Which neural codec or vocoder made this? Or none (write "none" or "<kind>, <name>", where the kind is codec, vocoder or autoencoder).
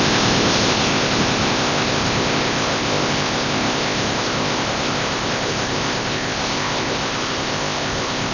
codec, ZipCodec